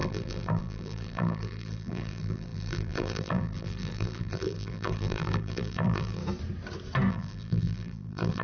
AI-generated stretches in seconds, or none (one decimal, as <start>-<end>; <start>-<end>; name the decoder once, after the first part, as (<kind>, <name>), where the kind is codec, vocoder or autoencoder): 0.0-6.2 (vocoder, BigVGAN v2); 7.1-8.4